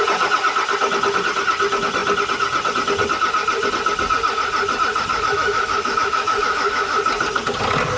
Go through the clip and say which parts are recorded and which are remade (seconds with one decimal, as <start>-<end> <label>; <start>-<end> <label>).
0.0-5.1 recorded; 5.1-7.0 remade; 7.0-8.0 recorded

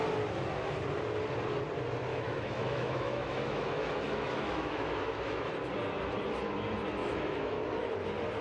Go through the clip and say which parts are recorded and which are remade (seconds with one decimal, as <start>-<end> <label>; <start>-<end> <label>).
0.0-2.1 recorded; 2.1-5.5 remade; 5.5-7.0 recorded; 7.0-7.6 remade; 7.6-8.4 recorded

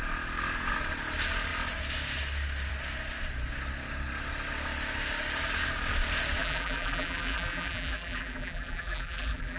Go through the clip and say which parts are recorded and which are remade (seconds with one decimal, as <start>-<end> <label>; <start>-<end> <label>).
0.0-6.4 recorded; 6.4-9.6 remade

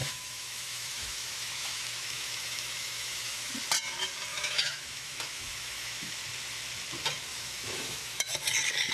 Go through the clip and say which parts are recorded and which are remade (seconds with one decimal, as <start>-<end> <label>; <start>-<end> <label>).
0.0-3.5 remade; 3.5-4.3 recorded; 4.3-6.1 remade; 6.1-7.3 recorded; 7.3-8.3 remade; 8.3-8.9 recorded

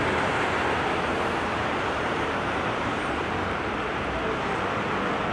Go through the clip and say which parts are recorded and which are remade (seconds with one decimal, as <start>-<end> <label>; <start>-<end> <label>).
0.0-1.1 recorded; 1.1-4.0 remade; 4.0-5.3 recorded